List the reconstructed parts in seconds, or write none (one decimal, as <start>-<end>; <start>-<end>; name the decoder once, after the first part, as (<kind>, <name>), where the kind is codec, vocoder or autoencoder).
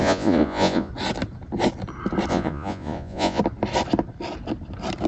0.0-0.9 (vocoder, Vocos); 2.3-3.4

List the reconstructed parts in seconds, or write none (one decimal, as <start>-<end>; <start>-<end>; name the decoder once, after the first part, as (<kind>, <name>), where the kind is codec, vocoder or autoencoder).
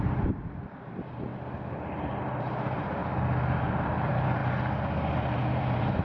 0.0-1.3 (vocoder, BigVGAN v2); 2.2-3.0; 3.7-4.4; 5.2-6.0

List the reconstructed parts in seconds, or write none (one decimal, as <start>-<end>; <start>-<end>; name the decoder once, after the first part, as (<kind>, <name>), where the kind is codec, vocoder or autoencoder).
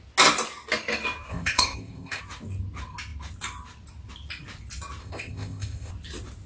1.3-2.2 (codec, ZipCodec); 5.0-5.9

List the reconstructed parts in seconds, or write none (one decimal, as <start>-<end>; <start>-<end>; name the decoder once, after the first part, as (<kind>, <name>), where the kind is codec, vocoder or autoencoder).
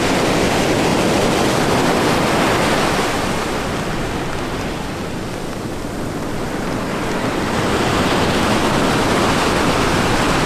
0.9-1.6 (vocoder, BigVGAN v2)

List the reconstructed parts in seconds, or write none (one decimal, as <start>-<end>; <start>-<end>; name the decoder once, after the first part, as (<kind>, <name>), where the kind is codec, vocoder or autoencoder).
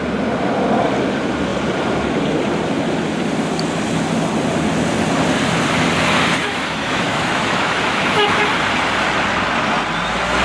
6.4-8.4 (autoencoder, DAC-VAE)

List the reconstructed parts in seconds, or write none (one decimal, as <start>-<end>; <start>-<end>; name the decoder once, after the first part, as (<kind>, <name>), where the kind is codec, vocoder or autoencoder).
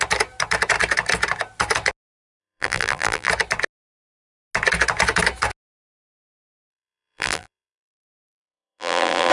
2.4-3.3 (vocoder, BigVGAN v2); 6.7-9.3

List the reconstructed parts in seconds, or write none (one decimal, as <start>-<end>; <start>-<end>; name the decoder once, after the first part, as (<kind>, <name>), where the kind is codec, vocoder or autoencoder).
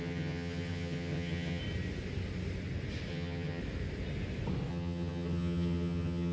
0.0-1.6 (vocoder, HiFi-GAN); 3.1-3.6; 4.7-6.3